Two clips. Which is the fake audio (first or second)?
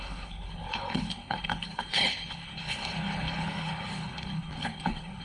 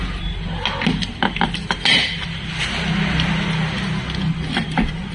first